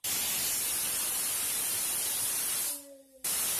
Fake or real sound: real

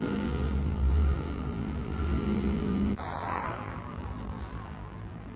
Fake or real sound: fake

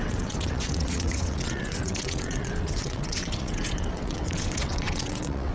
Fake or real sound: fake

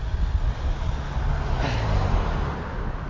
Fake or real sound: real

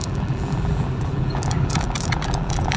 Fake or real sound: fake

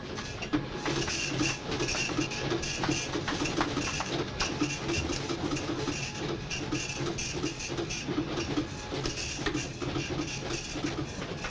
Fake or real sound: real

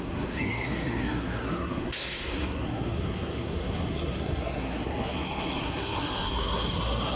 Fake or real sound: fake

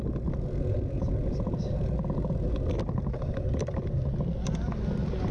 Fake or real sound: real